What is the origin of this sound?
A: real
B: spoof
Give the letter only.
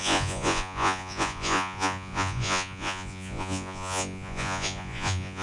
B